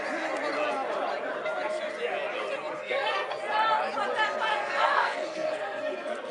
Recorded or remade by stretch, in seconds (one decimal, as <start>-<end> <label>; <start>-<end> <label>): 0.0-2.8 recorded; 2.8-3.4 remade; 3.4-4.5 recorded; 4.5-6.3 remade